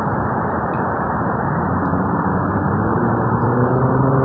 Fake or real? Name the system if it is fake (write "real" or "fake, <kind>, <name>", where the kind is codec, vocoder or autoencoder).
fake, vocoder, BigVGAN v2